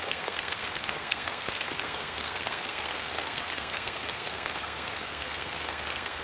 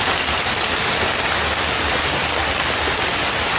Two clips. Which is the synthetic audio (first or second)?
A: first